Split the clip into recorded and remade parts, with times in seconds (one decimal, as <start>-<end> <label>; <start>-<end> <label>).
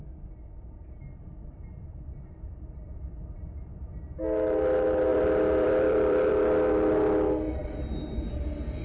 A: 0.0-1.5 recorded; 1.5-3.8 remade; 3.8-5.1 recorded; 5.1-6.3 remade; 6.3-8.8 recorded